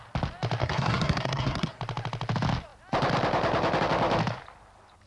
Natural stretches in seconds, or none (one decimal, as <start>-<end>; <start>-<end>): 0.0-0.6; 1.8-5.1